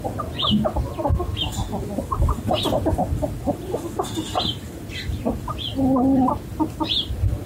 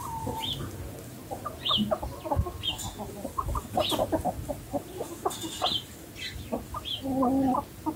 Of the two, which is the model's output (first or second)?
first